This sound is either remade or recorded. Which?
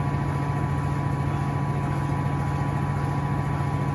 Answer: recorded